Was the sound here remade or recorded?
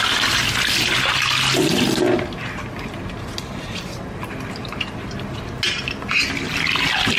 recorded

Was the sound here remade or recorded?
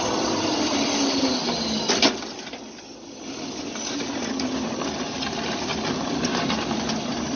recorded